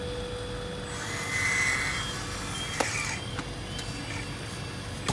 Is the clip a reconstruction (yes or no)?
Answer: no